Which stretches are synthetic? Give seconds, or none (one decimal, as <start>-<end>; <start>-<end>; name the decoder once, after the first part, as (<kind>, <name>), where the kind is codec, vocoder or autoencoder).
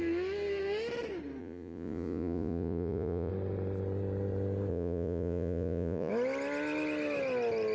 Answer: 1.4-3.3 (vocoder, Vocos); 4.7-6.1